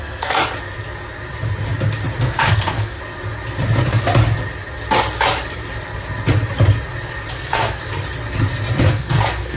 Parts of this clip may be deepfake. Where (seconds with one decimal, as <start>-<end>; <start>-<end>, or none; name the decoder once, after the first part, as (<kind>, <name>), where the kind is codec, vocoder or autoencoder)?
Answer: 0.0-0.4 (codec, SNAC); 2.2-3.0; 7.3-7.8; 8.8-9.6